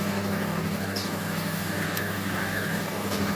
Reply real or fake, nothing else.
fake